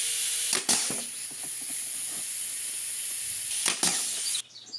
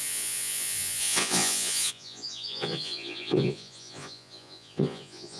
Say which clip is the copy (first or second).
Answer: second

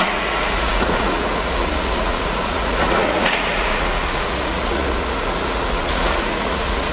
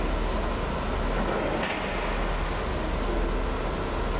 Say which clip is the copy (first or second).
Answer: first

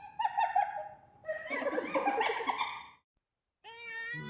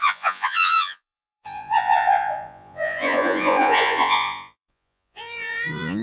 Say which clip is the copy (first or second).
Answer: second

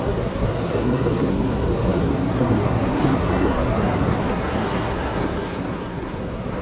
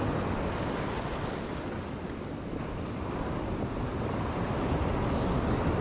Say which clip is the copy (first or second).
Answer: first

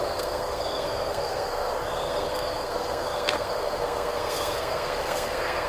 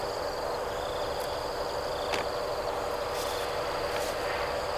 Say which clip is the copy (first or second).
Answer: first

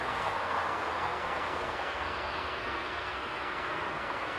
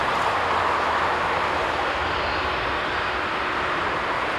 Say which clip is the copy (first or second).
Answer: first